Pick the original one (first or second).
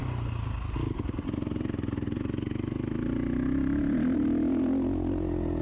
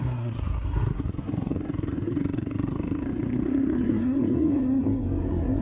first